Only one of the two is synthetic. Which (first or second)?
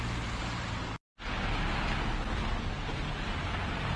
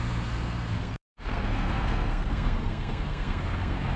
second